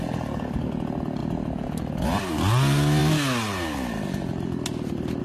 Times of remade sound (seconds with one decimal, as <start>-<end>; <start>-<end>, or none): none